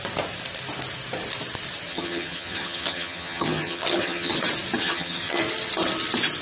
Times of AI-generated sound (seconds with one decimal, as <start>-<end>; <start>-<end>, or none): 1.9-4.3; 4.8-5.4